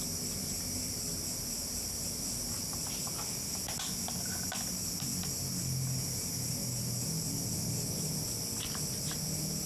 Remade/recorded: recorded